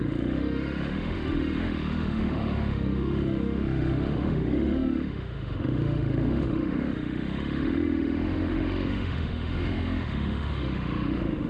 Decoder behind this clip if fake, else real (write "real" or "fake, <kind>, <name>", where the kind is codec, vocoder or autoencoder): fake, autoencoder, DAC-VAE